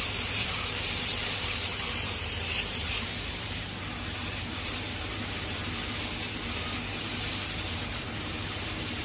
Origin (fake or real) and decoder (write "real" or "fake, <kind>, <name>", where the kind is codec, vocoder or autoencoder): fake, vocoder, BigVGAN v2